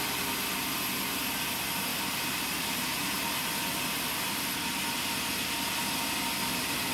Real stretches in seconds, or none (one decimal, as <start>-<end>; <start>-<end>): 0.0-6.9